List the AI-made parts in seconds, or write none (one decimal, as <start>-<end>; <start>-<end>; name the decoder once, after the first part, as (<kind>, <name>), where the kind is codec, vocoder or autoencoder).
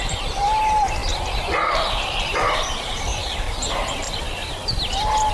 0.0-1.0 (vocoder, BigVGAN v2); 1.7-4.4